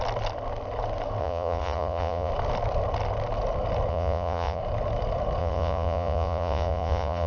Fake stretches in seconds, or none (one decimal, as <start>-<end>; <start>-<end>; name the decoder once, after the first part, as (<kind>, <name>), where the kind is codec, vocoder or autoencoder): 1.2-2.3 (vocoder, Vocos); 3.9-4.6; 5.4-7.3